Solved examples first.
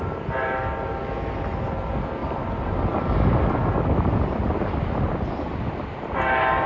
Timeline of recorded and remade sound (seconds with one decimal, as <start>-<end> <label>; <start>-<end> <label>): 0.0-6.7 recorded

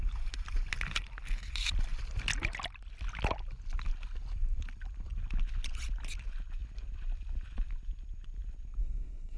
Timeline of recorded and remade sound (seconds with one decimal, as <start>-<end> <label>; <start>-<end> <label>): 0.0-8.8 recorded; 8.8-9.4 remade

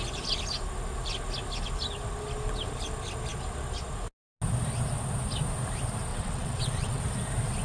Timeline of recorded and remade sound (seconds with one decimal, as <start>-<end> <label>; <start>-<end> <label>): 0.0-6.1 recorded; 6.1-7.0 remade; 7.0-7.6 recorded

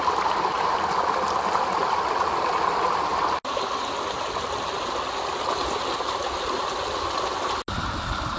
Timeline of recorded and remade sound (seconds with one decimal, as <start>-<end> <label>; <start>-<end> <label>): 0.0-8.4 recorded